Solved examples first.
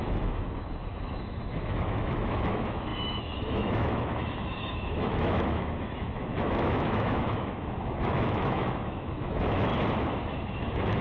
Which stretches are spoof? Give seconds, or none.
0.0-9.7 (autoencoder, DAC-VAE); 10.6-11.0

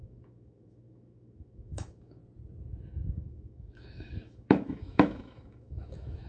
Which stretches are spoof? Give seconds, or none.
0.0-2.2 (autoencoder, DAC-VAE); 2.9-6.3

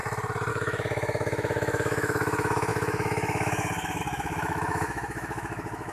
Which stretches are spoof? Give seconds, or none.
0.5-5.9 (autoencoder, DAC-VAE)